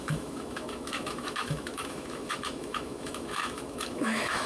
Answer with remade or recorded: remade